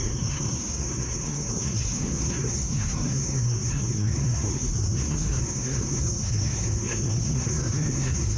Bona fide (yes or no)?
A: no